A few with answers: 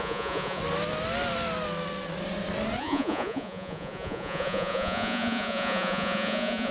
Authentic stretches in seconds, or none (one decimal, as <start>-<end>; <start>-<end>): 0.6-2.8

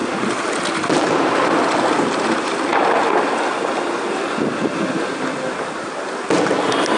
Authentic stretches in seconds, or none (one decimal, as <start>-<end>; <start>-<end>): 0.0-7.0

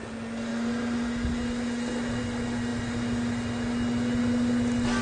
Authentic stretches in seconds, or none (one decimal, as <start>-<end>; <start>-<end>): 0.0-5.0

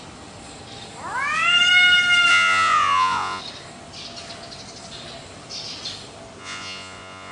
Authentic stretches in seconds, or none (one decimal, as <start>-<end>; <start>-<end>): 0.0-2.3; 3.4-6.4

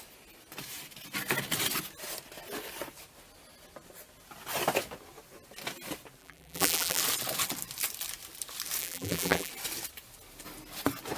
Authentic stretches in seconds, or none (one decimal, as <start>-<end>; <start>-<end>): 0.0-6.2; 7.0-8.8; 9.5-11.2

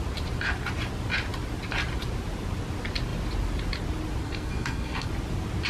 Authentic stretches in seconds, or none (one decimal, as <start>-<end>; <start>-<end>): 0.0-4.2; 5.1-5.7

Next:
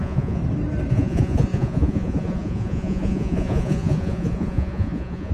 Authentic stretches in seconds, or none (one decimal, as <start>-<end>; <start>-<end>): 0.4-0.9

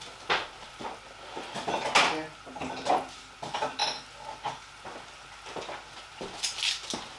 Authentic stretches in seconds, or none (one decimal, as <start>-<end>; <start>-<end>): 0.0-7.2